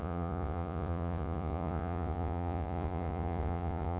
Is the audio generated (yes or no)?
yes